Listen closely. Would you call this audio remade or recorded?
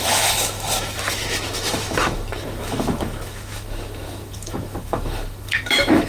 remade